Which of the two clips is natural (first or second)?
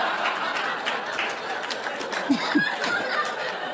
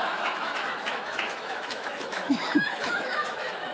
first